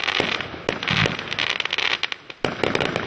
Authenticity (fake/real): real